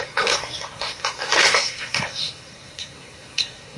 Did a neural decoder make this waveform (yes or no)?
yes